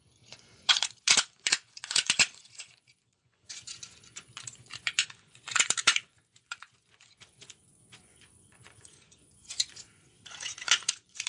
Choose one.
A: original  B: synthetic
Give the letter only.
B